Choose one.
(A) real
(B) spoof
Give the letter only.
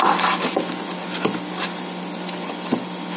A